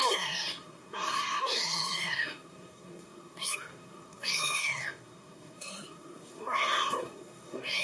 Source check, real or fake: fake